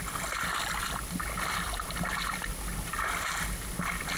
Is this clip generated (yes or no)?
no